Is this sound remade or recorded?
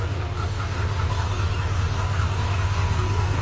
remade